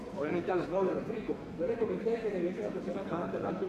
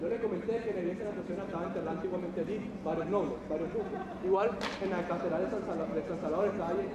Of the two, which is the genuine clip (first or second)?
second